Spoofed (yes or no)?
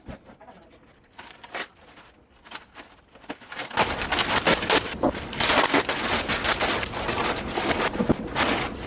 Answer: no